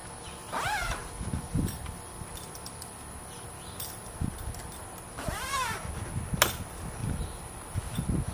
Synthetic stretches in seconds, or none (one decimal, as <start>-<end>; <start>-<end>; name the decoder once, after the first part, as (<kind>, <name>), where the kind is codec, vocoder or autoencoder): 0.0-5.0 (vocoder, BigVGAN v2); 7.0-7.8